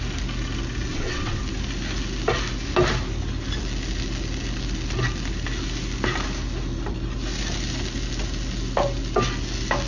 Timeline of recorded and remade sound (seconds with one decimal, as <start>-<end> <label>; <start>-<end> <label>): 0.0-0.9 recorded; 0.9-1.4 remade; 1.4-9.9 recorded